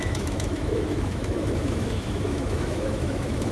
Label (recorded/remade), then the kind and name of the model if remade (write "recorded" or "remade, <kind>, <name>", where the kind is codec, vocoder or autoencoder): remade, autoencoder, DAC-VAE